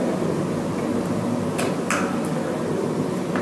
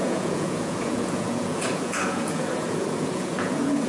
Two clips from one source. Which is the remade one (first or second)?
second